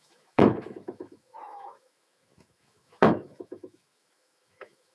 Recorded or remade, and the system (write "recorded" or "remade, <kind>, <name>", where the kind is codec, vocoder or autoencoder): remade, autoencoder, DAC-VAE